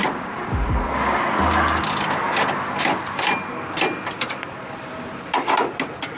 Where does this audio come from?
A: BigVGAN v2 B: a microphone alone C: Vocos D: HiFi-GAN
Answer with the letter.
B